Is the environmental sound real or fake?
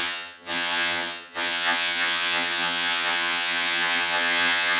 fake